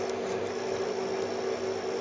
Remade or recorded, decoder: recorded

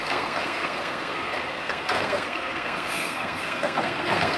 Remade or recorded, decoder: remade, codec, SNAC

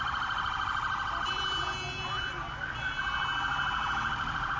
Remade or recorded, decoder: recorded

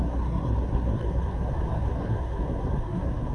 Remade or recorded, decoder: remade, codec, SNAC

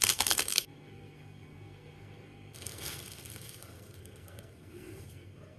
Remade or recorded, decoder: remade, codec, SNAC